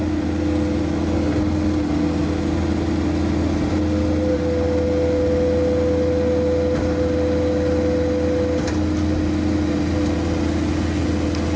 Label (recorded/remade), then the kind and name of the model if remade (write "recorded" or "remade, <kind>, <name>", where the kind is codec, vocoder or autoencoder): recorded